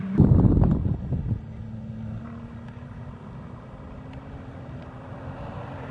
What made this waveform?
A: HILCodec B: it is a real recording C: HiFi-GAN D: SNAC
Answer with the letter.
B